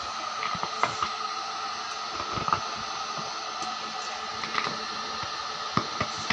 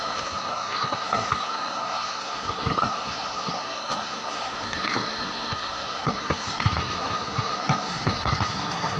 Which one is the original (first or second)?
first